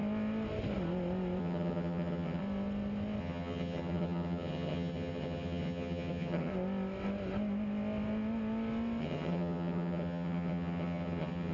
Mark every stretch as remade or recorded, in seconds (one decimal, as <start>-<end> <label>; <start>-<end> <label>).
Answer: 0.0-1.4 recorded; 1.4-2.4 remade; 2.4-3.2 recorded; 3.2-6.5 remade; 6.5-9.0 recorded; 9.0-11.5 remade